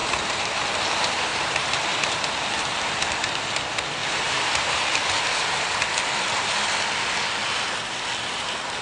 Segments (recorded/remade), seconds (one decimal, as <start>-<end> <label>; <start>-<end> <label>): 0.0-0.7 remade; 0.7-1.3 recorded; 1.3-3.4 remade; 3.4-4.0 recorded; 4.0-4.9 remade; 4.9-8.8 recorded